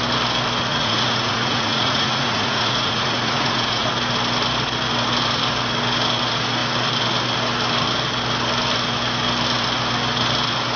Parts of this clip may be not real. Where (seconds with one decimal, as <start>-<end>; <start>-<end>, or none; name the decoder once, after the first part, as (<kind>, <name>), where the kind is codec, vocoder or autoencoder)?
0.7-3.9 (vocoder, Vocos)